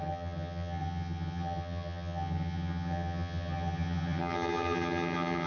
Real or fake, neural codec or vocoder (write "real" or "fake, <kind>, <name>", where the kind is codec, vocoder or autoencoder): fake, vocoder, HiFi-GAN